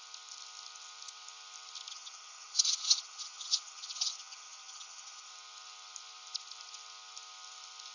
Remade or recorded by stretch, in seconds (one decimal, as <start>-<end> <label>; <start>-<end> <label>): 0.0-1.9 recorded; 1.9-5.3 remade; 5.3-7.9 recorded

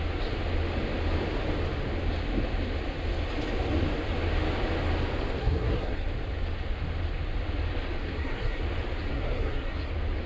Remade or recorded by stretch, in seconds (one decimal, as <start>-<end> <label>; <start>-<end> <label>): 0.0-5.4 recorded; 5.4-6.1 remade; 6.1-8.0 recorded; 8.0-8.6 remade; 8.6-9.1 recorded; 9.1-9.9 remade; 9.9-10.3 recorded

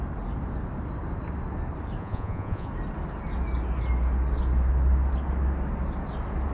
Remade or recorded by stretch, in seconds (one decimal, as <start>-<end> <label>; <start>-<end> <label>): 0.0-2.0 recorded; 2.0-2.7 remade; 2.7-6.5 recorded

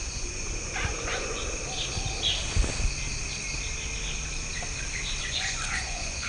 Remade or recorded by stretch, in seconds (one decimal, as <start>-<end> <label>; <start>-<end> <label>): 0.0-1.4 remade; 1.4-5.2 recorded; 5.2-6.3 remade

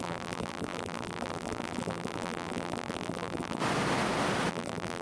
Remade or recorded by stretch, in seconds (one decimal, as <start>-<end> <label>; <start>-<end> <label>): 0.0-3.6 remade; 3.6-4.5 recorded; 4.5-5.0 remade

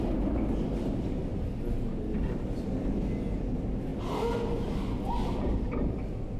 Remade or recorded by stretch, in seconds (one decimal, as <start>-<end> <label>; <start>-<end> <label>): 0.0-6.4 recorded